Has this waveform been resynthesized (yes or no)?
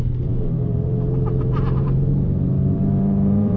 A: yes